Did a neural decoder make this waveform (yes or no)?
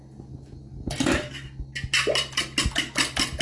no